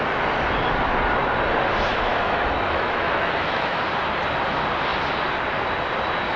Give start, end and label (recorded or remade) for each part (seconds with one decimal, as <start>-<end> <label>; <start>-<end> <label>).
0.0-1.9 recorded; 1.9-3.8 remade; 3.8-6.4 recorded